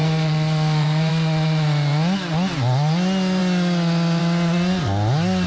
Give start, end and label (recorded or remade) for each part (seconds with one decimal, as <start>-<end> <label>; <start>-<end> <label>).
0.0-1.1 remade; 1.1-5.5 recorded